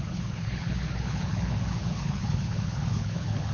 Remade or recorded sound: remade